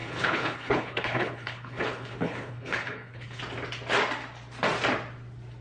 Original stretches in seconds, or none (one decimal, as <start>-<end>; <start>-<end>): 3.4-5.6